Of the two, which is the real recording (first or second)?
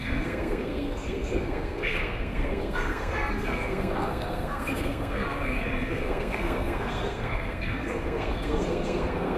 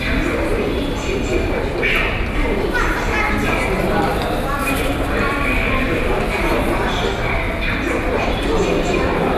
second